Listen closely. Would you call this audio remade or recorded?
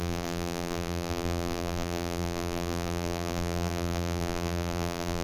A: remade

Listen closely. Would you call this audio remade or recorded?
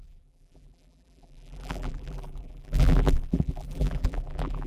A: remade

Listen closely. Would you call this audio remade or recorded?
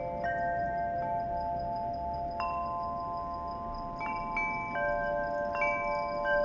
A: recorded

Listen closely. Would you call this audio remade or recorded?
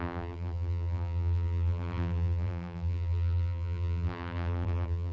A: remade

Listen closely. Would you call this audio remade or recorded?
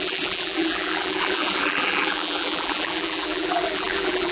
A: remade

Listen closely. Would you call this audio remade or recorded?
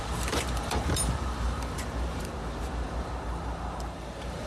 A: remade